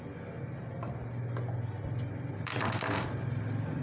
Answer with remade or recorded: recorded